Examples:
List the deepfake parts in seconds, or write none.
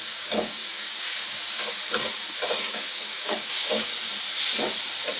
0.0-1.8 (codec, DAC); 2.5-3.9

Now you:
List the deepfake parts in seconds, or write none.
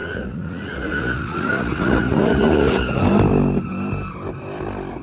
0.0-3.0 (vocoder, Vocos)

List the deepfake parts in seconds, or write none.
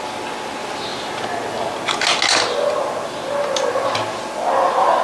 none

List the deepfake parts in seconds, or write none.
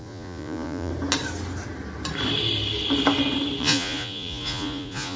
0.0-0.9 (vocoder, Vocos); 3.6-5.2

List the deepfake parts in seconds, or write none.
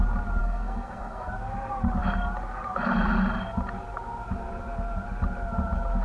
0.4-1.3 (codec, SNAC)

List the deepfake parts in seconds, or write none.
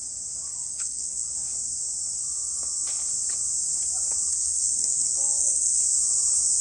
0.5-1.3 (codec, SNAC); 4.3-5.8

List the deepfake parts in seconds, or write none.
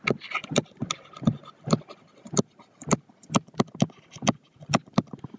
none